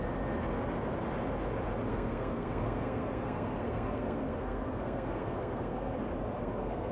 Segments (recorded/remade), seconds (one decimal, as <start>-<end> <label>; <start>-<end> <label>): 0.0-1.9 recorded; 1.9-6.0 remade; 6.0-6.4 recorded; 6.4-6.9 remade